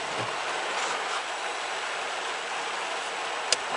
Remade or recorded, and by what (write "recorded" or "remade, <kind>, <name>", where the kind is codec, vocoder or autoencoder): recorded